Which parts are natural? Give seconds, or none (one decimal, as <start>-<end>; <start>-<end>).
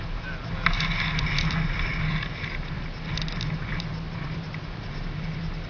0.0-5.7